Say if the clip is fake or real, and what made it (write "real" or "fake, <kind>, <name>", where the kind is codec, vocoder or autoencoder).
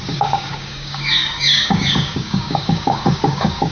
fake, codec, DAC